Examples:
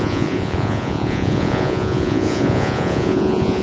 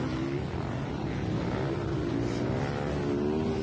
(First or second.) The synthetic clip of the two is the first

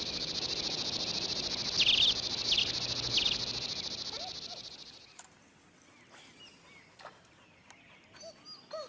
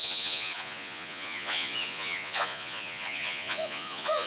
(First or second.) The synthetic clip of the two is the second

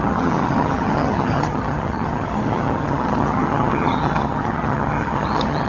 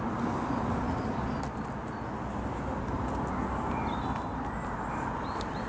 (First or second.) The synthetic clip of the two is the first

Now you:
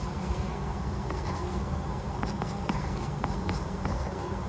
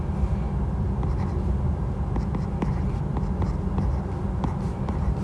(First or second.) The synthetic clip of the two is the first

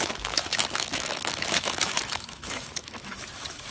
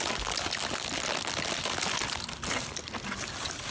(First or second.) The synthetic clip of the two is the first